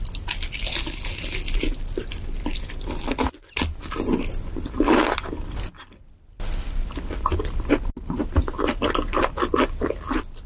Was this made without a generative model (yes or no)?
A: yes